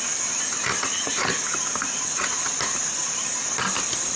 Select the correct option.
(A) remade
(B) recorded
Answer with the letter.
B